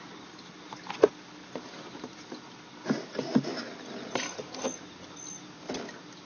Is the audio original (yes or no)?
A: yes